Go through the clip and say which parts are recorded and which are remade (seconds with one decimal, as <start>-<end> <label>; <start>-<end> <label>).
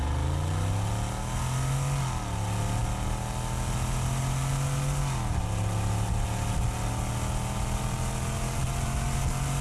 0.0-9.6 recorded